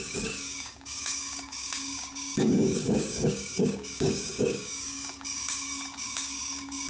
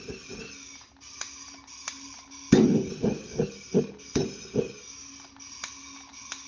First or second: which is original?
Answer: second